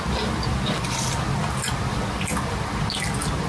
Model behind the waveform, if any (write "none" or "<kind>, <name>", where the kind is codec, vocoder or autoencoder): none